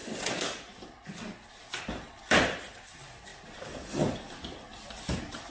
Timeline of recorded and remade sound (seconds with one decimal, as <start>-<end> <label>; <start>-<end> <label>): 0.0-5.5 recorded